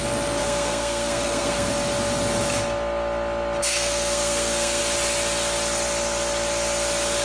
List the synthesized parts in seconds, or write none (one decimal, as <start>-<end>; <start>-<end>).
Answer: 0.4-1.7; 3.6-4.8